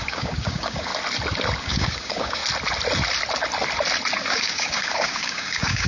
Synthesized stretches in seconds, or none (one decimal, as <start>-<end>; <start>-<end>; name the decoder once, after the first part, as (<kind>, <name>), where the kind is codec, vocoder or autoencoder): 0.0-0.9 (codec, DAC); 1.6-2.4; 4.3-5.9